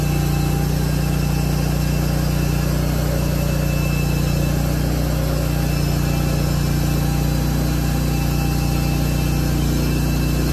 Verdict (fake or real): real